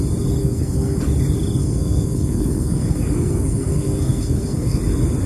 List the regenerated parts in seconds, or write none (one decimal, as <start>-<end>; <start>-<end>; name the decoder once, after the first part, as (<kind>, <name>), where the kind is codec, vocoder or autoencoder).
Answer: 0.4-1.0 (codec, SNAC); 1.6-4.8